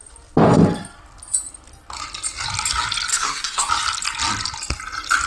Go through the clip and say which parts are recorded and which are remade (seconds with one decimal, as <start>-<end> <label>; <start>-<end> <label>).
0.0-3.1 recorded; 3.1-3.7 remade; 3.7-5.3 recorded